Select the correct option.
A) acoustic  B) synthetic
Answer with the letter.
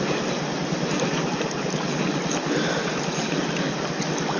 A